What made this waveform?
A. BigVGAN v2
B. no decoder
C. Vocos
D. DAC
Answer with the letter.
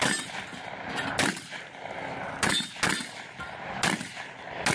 B